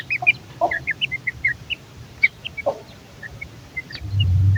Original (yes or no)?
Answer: no